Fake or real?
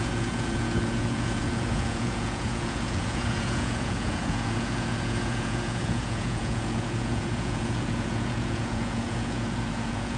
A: fake